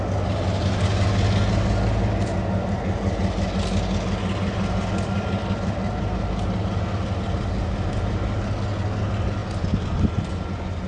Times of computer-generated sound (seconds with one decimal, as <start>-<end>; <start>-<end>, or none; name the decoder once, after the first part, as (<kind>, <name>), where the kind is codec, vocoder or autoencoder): none